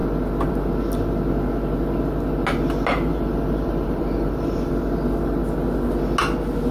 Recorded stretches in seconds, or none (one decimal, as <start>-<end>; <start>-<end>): 0.0-3.1; 4.7-6.7